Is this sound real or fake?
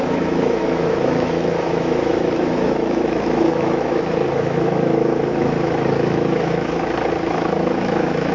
fake